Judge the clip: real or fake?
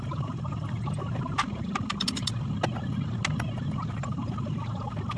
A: real